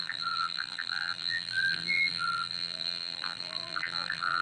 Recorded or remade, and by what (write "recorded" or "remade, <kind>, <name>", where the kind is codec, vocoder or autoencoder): remade, vocoder, BigVGAN v2